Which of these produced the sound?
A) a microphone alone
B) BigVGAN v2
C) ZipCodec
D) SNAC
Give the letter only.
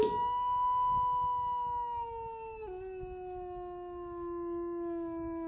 A